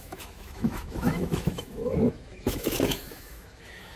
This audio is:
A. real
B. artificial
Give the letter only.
B